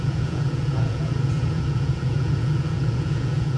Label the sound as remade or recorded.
remade